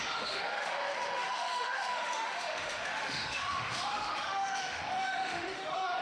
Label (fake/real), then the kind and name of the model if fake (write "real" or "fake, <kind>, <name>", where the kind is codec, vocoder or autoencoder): fake, autoencoder, DAC-VAE